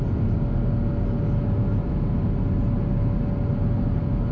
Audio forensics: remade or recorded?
recorded